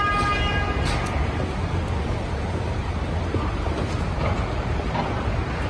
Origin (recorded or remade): recorded